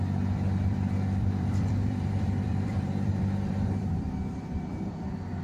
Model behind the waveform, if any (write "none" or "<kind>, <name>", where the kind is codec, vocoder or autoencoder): vocoder, BigVGAN v2